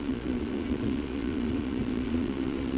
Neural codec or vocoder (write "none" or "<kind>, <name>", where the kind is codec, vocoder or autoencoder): vocoder, Vocos